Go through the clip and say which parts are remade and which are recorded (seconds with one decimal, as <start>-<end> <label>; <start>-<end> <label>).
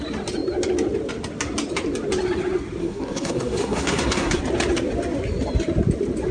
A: 0.0-2.8 recorded; 2.8-4.4 remade; 4.4-6.3 recorded